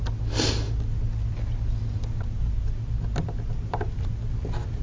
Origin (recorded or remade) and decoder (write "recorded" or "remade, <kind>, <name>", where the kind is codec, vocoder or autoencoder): recorded